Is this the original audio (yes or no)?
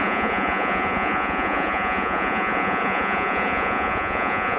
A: no